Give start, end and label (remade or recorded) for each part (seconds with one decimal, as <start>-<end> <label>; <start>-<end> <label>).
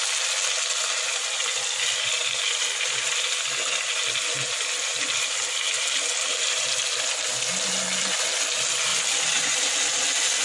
0.0-4.9 recorded; 4.9-6.8 remade; 6.8-8.9 recorded; 8.9-9.7 remade; 9.7-10.4 recorded